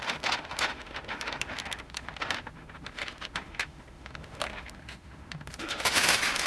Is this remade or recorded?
remade